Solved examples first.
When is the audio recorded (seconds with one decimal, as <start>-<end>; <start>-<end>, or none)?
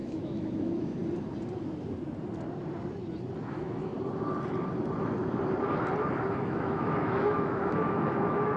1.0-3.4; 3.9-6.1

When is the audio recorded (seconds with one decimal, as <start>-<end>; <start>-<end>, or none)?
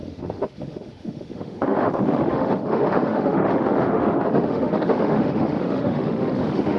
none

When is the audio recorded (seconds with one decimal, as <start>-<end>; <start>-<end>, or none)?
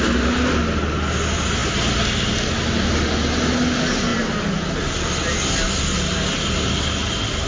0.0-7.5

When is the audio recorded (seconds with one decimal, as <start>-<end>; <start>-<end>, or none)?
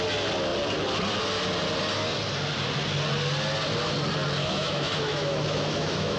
0.0-4.4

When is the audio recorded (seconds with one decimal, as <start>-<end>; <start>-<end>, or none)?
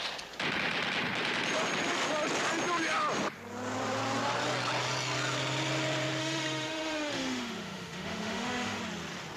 0.0-6.2; 8.8-9.4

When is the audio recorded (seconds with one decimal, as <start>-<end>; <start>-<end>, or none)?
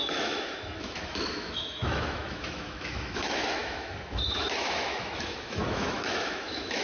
none